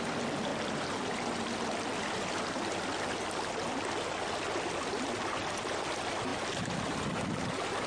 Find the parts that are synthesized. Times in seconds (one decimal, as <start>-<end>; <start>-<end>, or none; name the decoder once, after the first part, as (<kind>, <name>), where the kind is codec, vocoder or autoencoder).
none